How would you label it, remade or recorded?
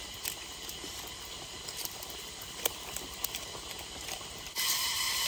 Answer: remade